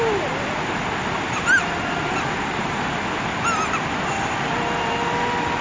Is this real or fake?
real